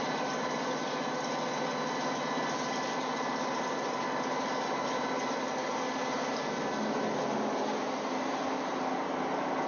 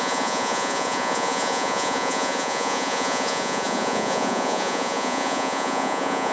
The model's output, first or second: second